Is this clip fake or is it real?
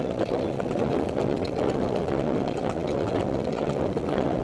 fake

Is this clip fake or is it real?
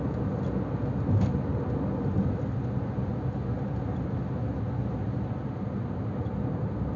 real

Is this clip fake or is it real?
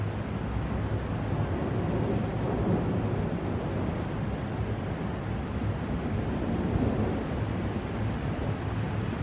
real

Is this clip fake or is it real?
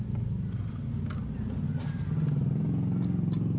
real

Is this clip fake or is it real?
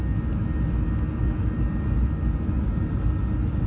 real